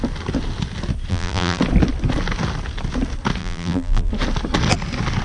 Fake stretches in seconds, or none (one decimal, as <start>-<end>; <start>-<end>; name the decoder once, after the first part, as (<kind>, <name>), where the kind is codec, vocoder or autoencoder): 1.1-1.6 (vocoder, BigVGAN v2); 3.4-4.1